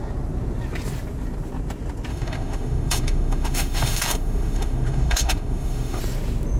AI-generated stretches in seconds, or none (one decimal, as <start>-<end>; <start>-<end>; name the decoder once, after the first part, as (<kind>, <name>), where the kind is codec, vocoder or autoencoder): 2.1-6.0 (autoencoder, DAC-VAE)